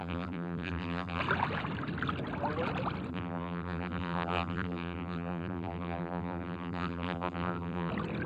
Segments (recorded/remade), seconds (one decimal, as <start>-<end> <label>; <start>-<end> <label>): 0.0-1.2 remade; 1.2-3.1 recorded; 3.1-7.9 remade; 7.9-8.3 recorded